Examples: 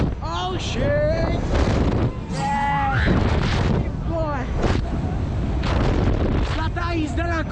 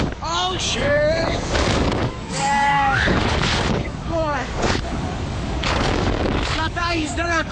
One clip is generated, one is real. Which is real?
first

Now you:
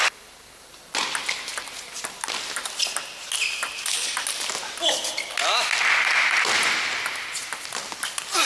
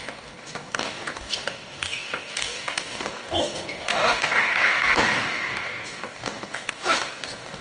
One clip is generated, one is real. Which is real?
first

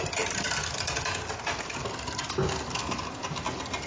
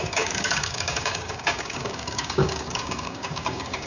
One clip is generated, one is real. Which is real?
first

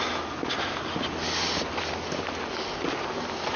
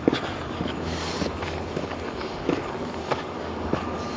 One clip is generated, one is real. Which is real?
first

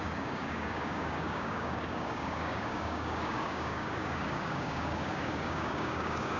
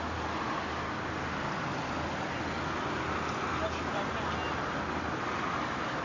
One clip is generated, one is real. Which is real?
second